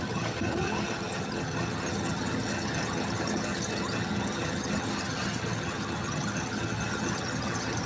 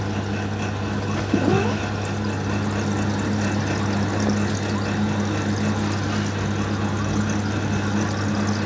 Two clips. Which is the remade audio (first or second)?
first